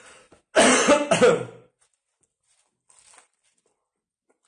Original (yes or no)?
yes